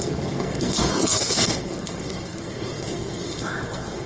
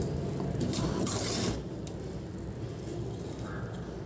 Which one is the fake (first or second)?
first